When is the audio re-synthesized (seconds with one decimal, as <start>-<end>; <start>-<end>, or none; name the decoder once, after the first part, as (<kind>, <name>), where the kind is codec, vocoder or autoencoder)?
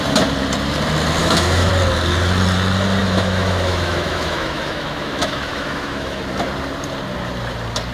1.2-1.7 (autoencoder, DAC-VAE); 3.0-6.2